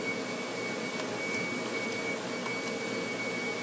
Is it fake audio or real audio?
real